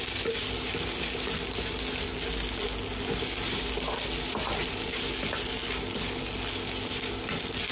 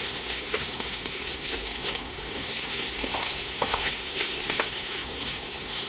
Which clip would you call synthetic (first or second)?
second